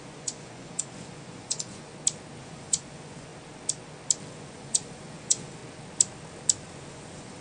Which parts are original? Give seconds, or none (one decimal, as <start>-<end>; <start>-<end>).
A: 1.9-2.4; 3.3-4.3; 5.6-6.6